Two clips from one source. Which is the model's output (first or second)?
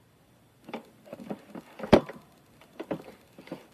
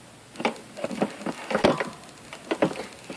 first